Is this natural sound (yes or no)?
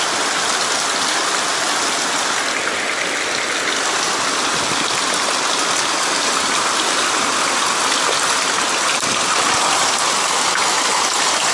yes